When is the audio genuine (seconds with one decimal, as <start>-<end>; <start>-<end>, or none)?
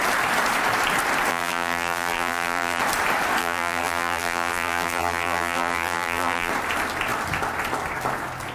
0.0-1.3; 2.8-3.4; 6.5-8.5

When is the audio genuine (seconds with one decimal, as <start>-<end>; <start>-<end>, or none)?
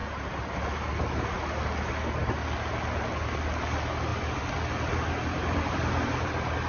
0.0-4.1; 6.3-6.7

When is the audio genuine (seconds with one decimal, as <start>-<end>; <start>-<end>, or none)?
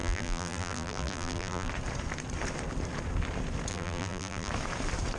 1.7-3.7; 4.5-5.2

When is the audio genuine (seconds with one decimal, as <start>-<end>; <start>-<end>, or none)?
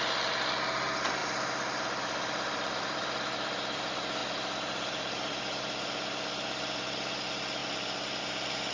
0.0-1.2; 3.8-4.2; 5.4-7.6; 8.2-8.7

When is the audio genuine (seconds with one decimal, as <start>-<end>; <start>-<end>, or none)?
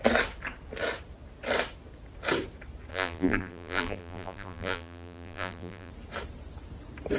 0.0-2.9; 5.9-7.2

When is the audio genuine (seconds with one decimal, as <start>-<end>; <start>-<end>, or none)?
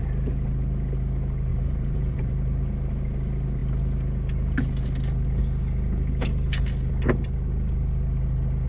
0.0-1.5; 2.3-8.7